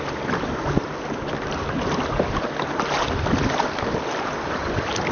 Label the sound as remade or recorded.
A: recorded